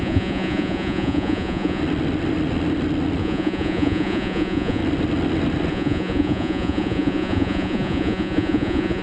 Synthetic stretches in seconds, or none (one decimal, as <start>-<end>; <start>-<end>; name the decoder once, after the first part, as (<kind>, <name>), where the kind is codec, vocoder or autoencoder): 0.0-1.8 (vocoder, Vocos); 3.2-4.8; 5.7-9.0